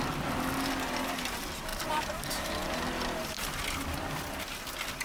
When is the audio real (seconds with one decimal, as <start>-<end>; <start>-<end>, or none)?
0.0-5.0